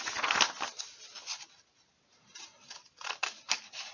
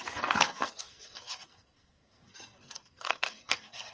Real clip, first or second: first